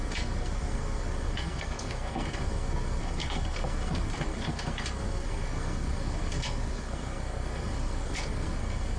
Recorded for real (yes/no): no